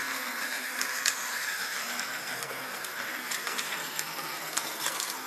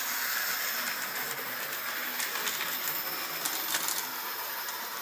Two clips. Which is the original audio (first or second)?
second